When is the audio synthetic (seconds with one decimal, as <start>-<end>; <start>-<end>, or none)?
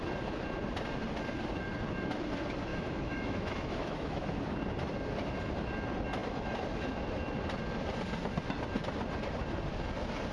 2.7-4.4